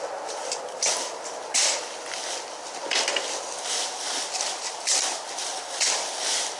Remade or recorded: recorded